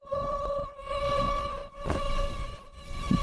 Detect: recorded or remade remade